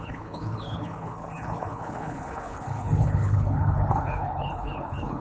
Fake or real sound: fake